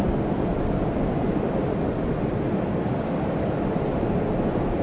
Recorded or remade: recorded